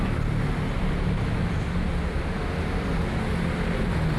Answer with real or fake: real